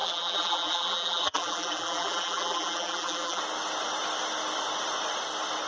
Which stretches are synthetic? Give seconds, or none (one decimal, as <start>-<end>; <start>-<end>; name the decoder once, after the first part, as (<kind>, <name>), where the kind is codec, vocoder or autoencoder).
0.0-3.4 (vocoder, BigVGAN v2)